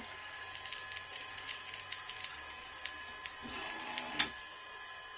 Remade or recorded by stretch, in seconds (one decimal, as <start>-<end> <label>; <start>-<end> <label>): 0.0-1.1 recorded; 1.1-2.8 remade; 2.8-5.2 recorded

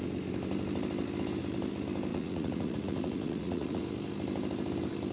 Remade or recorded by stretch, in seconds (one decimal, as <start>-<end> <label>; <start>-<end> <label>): 0.0-2.1 recorded; 2.1-3.8 remade; 3.8-5.1 recorded